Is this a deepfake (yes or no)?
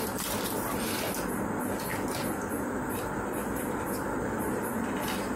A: no